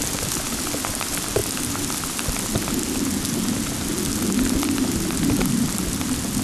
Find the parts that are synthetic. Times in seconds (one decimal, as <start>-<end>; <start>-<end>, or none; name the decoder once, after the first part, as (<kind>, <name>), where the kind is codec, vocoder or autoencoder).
none